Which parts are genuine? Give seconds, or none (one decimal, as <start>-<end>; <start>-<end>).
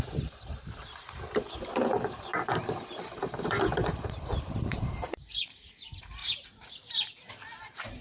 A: 2.3-3.1